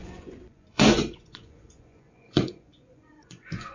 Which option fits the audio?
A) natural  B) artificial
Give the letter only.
B